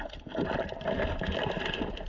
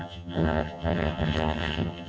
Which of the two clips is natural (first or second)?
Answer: first